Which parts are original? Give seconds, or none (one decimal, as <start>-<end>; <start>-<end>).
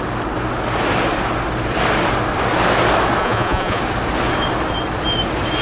0.0-3.2; 3.8-5.6